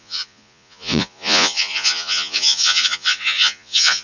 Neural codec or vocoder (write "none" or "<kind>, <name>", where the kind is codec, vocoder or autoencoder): vocoder, Vocos